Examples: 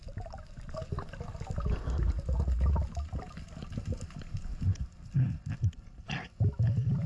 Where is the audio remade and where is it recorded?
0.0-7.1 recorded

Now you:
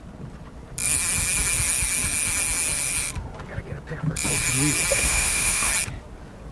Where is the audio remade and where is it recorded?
0.0-4.9 recorded; 4.9-5.7 remade; 5.7-6.5 recorded

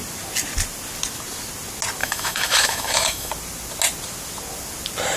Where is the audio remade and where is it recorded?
0.0-2.0 recorded; 2.0-3.3 remade; 3.3-5.2 recorded

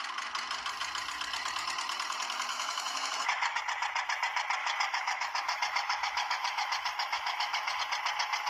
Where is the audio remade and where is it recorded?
0.0-2.5 recorded; 2.5-3.6 remade; 3.6-4.6 recorded; 4.6-7.8 remade; 7.8-8.5 recorded

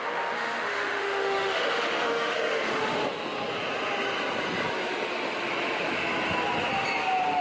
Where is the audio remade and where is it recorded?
0.0-3.0 remade; 3.0-7.4 recorded

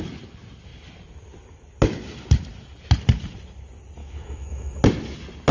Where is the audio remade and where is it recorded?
0.0-4.0 recorded; 4.0-4.8 remade; 4.8-5.5 recorded

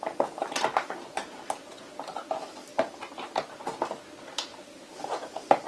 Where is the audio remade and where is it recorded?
0.0-5.7 recorded